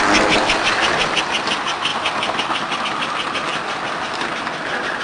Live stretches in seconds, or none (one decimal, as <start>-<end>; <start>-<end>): 0.0-1.9; 2.8-5.0